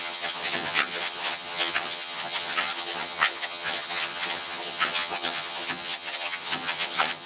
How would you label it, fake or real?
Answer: fake